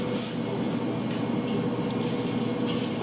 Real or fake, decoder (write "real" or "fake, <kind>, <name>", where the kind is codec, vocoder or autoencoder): real